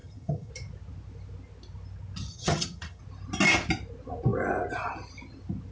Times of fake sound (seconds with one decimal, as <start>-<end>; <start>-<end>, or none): 0.0-0.5; 2.3-3.0